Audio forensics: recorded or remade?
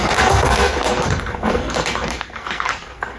remade